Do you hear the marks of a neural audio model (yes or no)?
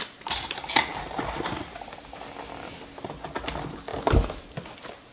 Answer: no